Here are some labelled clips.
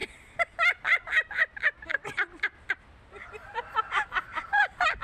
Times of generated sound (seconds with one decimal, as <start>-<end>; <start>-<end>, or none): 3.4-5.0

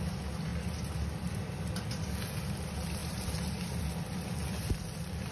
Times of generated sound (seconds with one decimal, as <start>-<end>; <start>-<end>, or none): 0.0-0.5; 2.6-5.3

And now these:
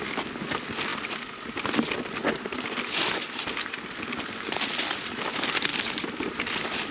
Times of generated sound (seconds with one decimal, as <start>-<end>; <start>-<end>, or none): 0.9-1.5; 5.7-6.3

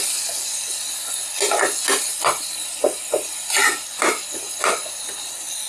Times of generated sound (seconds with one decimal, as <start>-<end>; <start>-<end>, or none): none

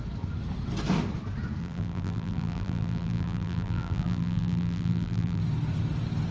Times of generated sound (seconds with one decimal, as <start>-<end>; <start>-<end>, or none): 1.6-5.4